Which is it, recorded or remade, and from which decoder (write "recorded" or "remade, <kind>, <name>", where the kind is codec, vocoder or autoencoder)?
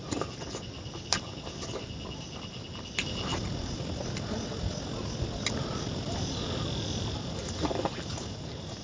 recorded